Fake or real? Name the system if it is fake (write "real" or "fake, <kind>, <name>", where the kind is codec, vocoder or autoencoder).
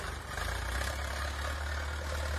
real